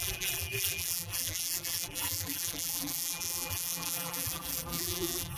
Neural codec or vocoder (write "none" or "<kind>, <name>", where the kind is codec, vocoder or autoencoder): vocoder, BigVGAN v2